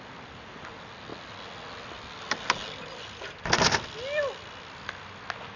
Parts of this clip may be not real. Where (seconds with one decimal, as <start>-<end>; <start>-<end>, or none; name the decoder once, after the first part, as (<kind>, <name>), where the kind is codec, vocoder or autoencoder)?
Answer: none